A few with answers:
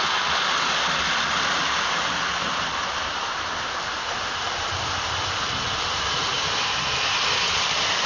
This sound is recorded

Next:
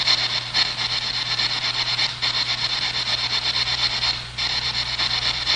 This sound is recorded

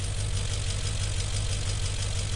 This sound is recorded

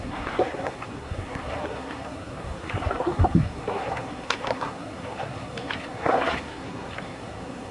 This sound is remade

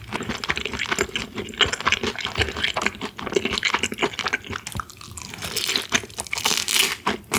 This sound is recorded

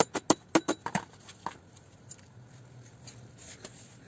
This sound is recorded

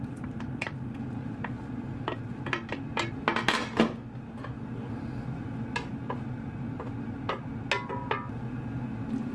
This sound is recorded